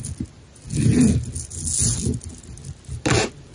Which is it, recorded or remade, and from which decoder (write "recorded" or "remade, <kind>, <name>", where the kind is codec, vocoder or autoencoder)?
recorded